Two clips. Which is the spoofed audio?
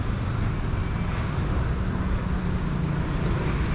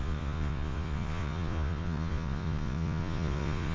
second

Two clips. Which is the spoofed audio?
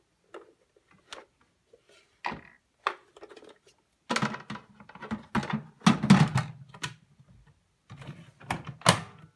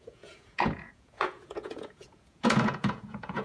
second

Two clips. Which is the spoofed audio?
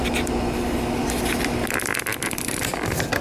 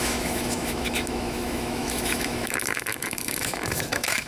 second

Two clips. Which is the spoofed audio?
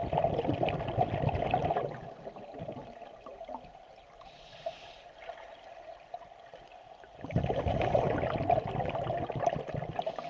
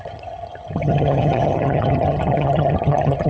second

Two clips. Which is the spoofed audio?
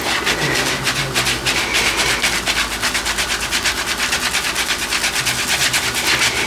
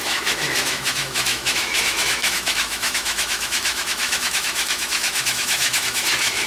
second